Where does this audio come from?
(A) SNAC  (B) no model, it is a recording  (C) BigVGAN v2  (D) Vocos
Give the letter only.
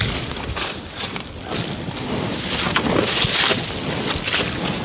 B